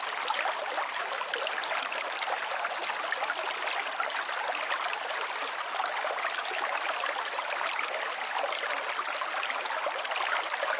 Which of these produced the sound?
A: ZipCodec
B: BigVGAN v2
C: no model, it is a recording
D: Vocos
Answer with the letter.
C